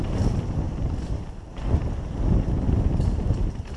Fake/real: fake